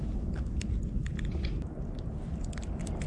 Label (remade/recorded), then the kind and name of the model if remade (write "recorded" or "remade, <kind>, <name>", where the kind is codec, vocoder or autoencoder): recorded